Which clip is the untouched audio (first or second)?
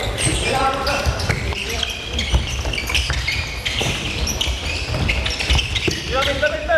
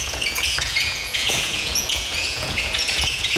first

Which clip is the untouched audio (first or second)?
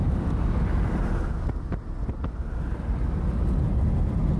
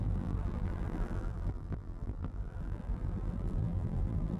first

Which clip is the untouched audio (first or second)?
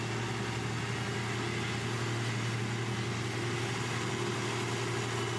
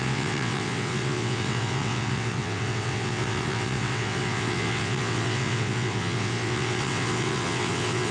first